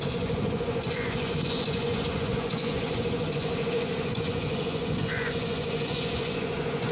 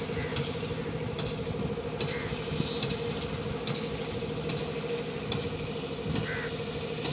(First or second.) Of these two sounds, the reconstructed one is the first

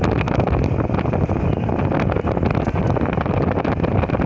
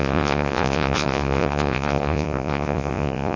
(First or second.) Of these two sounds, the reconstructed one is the second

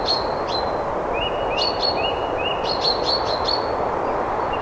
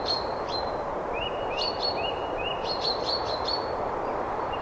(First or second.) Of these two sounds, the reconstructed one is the second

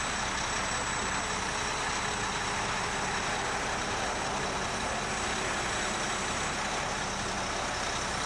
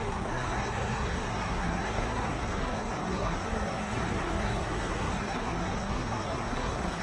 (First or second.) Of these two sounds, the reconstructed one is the second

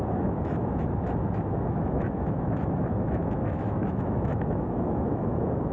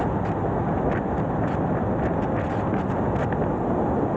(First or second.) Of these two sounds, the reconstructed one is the first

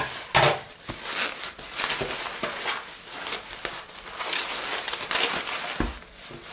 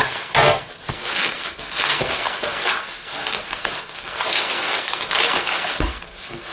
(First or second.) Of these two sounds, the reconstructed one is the second